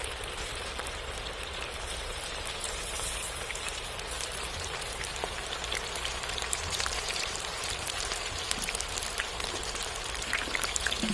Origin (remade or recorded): remade